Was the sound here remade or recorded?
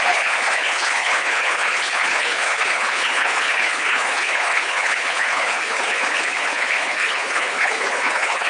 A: remade